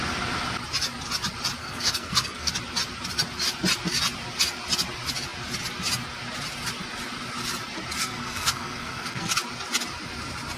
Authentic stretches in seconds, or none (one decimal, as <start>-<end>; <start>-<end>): 0.0-1.6; 2.5-8.0; 9.3-10.6